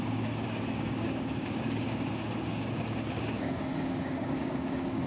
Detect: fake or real fake